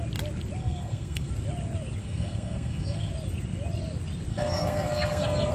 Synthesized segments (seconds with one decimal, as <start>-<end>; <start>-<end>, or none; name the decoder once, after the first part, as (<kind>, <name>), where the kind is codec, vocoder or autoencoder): 0.6-1.3 (codec, SNAC); 2.0-3.1; 4.3-5.5